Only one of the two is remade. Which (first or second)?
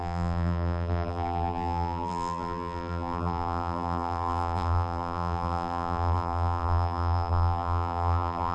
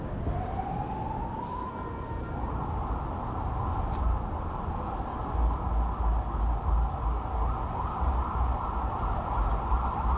first